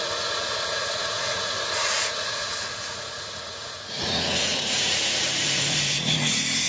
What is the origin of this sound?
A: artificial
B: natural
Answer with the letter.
A